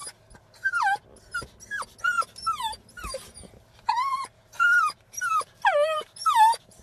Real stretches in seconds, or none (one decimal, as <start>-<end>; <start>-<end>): 0.0-3.9